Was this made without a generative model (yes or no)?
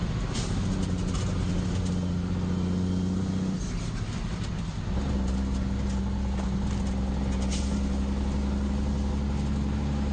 yes